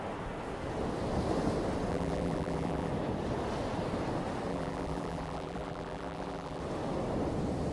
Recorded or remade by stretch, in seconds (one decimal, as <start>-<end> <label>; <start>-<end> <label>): 0.0-1.9 recorded; 1.9-2.9 remade; 2.9-4.5 recorded; 4.5-6.6 remade; 6.6-7.7 recorded